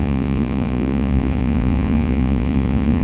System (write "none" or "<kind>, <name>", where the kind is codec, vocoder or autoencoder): vocoder, Vocos